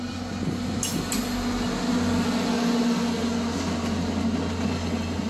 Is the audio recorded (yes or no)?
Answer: yes